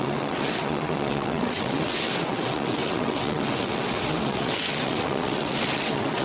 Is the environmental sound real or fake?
fake